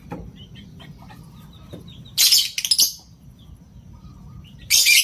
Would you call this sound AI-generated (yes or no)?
no